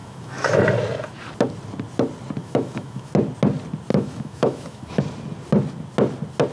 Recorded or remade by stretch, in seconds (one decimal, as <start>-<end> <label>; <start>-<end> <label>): 0.0-0.6 remade; 0.6-2.4 recorded; 2.4-3.1 remade; 3.1-3.9 recorded; 3.9-5.0 remade; 5.0-6.5 recorded